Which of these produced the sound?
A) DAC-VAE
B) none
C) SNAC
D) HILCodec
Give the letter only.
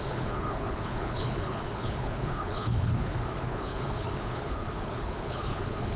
D